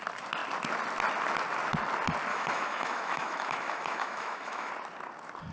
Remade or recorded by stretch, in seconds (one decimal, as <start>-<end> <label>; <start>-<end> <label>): 0.0-2.3 recorded; 2.3-4.7 remade; 4.7-5.5 recorded